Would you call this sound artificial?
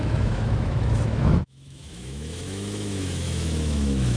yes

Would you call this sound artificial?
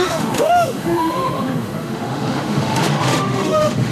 yes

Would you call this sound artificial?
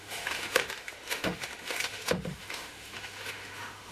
yes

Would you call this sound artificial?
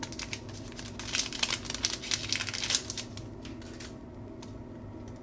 no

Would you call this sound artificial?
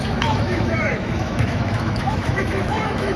yes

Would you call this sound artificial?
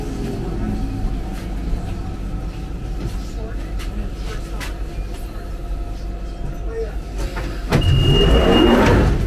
no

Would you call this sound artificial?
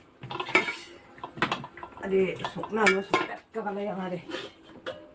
no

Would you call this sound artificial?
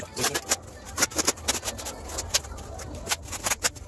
no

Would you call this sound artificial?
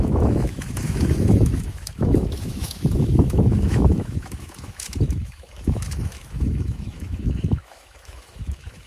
yes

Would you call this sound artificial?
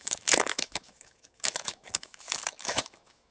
yes